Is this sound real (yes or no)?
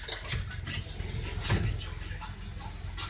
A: yes